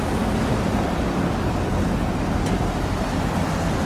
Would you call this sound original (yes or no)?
yes